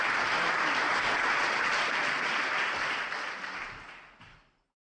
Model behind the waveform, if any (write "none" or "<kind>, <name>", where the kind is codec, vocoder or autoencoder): none